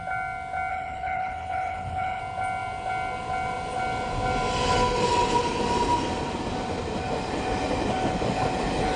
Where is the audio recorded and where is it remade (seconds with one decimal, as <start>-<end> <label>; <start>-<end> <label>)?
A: 0.0-0.7 recorded; 0.7-2.2 remade; 2.2-9.0 recorded

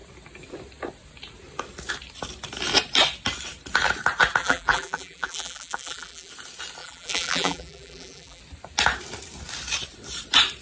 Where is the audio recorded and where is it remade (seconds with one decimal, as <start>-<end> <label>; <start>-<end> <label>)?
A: 0.0-4.4 recorded; 4.4-6.3 remade; 6.3-6.8 recorded; 6.8-8.4 remade; 8.4-10.6 recorded

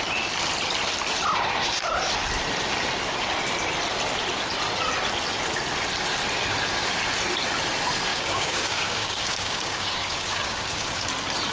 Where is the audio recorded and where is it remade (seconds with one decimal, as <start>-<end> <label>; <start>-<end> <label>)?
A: 0.0-8.1 recorded; 8.1-11.1 remade; 11.1-11.5 recorded

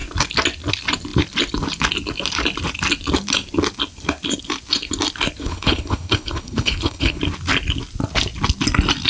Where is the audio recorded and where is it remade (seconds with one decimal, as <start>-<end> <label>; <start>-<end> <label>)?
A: 0.0-5.4 recorded; 5.4-7.2 remade; 7.2-9.1 recorded

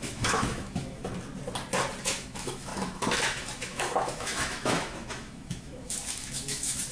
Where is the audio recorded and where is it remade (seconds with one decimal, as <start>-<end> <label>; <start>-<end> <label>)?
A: 0.0-1.1 remade; 1.1-2.0 recorded; 2.0-6.9 remade

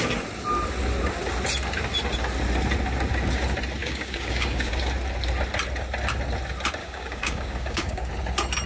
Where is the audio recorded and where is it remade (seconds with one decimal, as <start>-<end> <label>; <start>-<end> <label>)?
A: 0.0-3.8 recorded; 3.8-4.7 remade; 4.7-6.8 recorded; 6.8-8.1 remade; 8.1-8.7 recorded